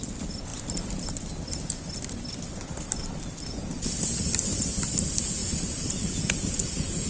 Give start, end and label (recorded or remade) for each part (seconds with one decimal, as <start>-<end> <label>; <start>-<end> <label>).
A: 0.0-5.4 recorded; 5.4-7.1 remade